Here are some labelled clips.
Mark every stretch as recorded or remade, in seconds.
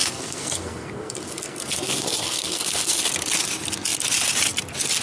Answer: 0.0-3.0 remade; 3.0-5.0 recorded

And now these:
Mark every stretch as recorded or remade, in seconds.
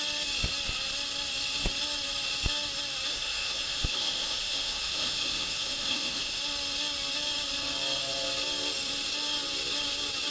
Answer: 0.0-3.1 recorded; 3.1-6.4 remade; 6.4-10.3 recorded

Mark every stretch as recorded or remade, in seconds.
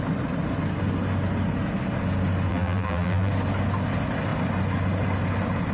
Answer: 0.0-2.5 recorded; 2.5-3.3 remade; 3.3-5.7 recorded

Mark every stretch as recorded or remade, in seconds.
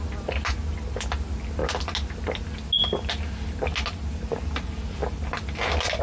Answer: 0.0-6.0 recorded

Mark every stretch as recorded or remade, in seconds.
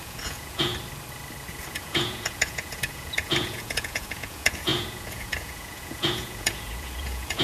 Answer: 0.0-0.7 remade; 0.7-1.5 recorded; 1.5-7.4 remade